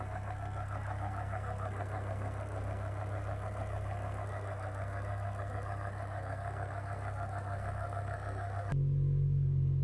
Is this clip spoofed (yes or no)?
yes